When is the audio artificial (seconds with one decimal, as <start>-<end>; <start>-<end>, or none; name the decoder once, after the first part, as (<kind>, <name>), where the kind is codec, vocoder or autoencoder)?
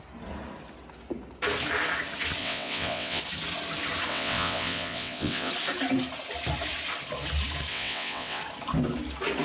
2.4-3.2 (vocoder, WaveNeXt); 4.1-5.5; 7.7-8.4